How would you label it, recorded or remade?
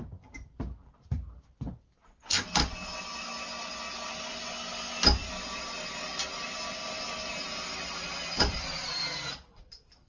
recorded